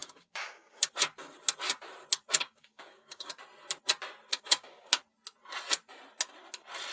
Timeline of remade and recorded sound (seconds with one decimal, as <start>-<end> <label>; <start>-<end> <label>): 0.0-0.9 remade; 0.9-2.4 recorded; 2.4-3.3 remade; 3.3-4.3 recorded; 4.3-5.0 remade; 5.0-6.9 recorded